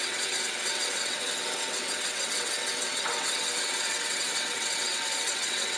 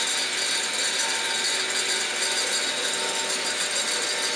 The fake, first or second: first